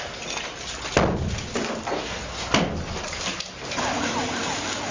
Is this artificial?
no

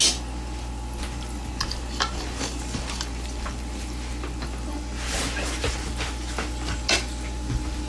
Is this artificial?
no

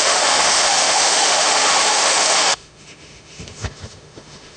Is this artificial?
yes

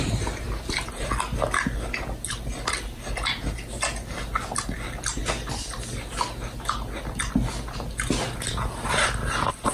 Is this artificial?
no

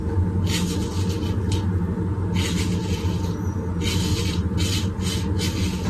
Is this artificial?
no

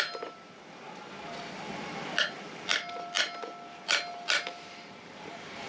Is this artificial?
no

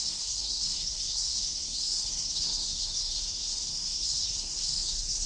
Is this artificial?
yes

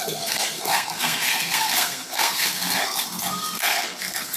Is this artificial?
yes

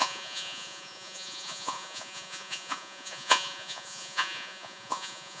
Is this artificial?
yes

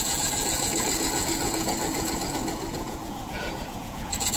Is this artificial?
yes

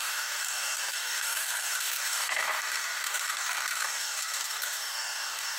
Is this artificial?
yes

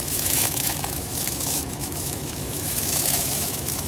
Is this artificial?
yes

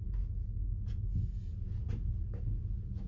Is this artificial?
no